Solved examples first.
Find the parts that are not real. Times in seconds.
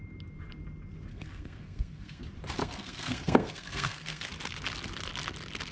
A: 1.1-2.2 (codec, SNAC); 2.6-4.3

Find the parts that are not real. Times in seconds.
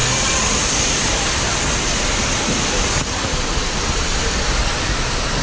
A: none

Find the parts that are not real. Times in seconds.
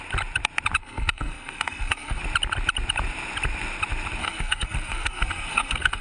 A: 0.8-2.2 (codec, SNAC); 4.2-6.0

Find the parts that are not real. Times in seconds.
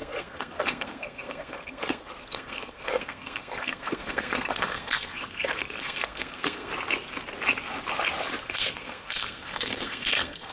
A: 0.0-6.7 (codec, SNAC); 8.4-10.5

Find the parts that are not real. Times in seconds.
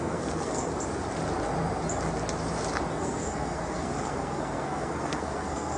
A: 0.0-0.7 (codec, SNAC); 2.9-5.8